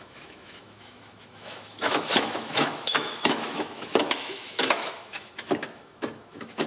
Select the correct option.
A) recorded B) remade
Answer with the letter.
B